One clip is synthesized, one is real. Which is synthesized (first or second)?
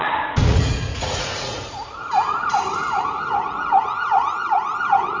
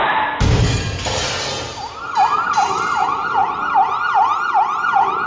first